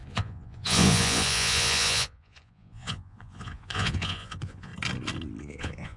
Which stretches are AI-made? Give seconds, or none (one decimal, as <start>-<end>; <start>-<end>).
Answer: 0.0-4.7; 5.4-6.0